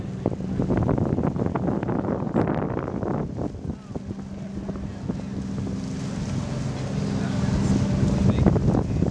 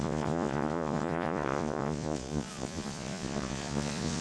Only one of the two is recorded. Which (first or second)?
first